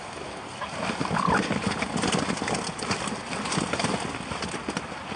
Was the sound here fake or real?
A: fake